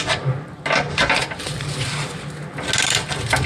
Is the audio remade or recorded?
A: recorded